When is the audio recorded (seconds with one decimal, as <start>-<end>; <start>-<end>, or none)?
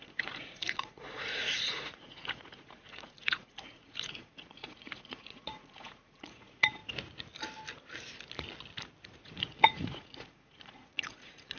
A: 6.8-9.2